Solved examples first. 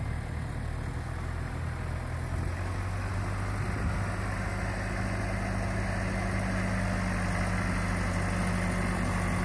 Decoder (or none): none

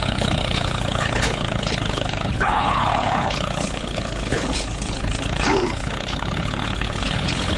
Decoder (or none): codec, HILCodec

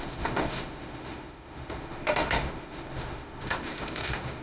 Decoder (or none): autoencoder, DAC-VAE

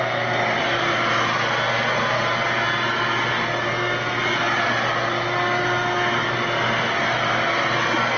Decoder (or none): none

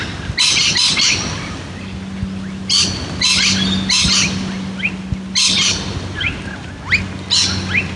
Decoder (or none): none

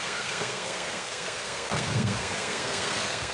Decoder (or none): codec, SNAC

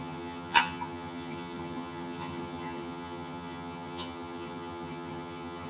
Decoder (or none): vocoder, HiFi-GAN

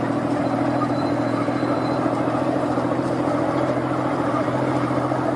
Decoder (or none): vocoder, BigVGAN v2